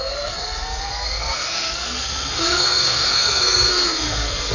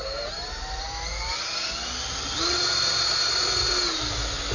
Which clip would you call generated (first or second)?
first